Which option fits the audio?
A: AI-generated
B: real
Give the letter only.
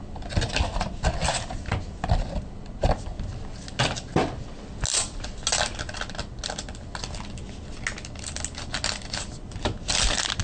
B